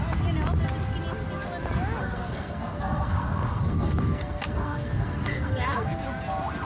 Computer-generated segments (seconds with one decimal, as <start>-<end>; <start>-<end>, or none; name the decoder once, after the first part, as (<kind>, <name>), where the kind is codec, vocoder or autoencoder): 2.0-6.0 (codec, SNAC)